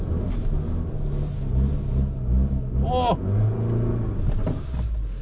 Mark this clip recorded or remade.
recorded